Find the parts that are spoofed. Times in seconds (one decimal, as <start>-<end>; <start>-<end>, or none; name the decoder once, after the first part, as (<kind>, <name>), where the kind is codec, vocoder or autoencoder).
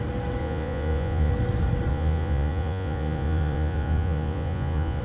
0.4-1.3 (vocoder, Vocos); 1.9-5.0